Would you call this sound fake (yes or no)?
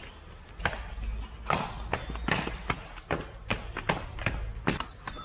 no